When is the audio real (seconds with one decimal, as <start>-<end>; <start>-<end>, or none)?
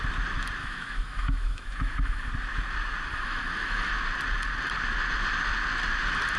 0.0-0.6; 2.3-3.1; 3.9-6.4